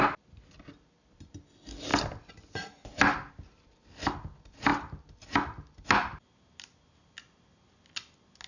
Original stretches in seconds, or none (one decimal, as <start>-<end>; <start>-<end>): 0.0-8.5